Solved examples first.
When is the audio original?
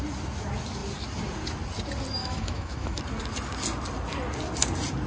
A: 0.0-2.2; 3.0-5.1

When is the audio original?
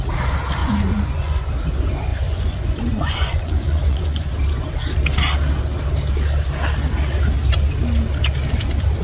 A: 0.0-0.6; 1.5-2.1; 4.3-9.0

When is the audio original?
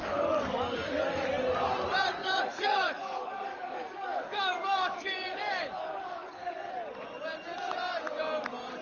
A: 1.4-2.2; 6.7-8.8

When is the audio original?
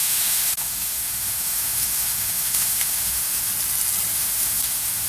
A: 3.5-4.1